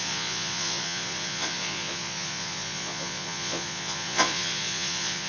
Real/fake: fake